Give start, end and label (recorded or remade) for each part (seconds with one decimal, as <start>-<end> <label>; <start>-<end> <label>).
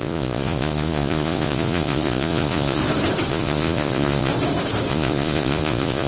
0.0-2.8 remade; 2.8-3.3 recorded; 3.3-4.3 remade; 4.3-4.9 recorded; 4.9-6.1 remade